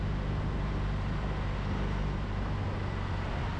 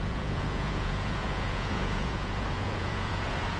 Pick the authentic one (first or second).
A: first